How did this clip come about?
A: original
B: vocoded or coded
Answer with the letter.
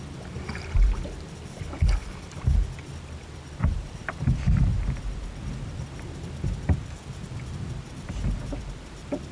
B